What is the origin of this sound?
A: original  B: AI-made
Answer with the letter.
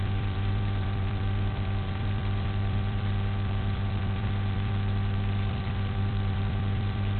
B